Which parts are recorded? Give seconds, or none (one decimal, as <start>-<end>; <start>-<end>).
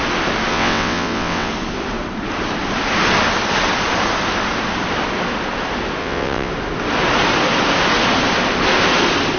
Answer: 0.0-0.5; 1.5-6.0; 6.5-9.4